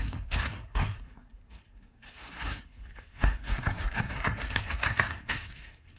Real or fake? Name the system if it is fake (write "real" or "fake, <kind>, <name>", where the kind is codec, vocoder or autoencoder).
fake, codec, SNAC